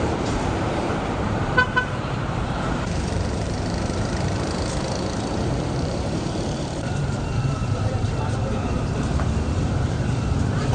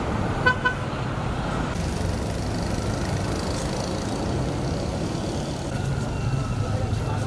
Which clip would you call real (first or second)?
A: second